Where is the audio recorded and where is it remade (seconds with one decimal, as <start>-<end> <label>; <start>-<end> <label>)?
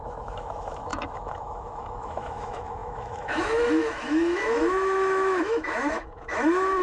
0.0-6.8 remade